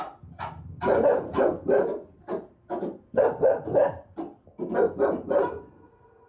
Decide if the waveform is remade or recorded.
recorded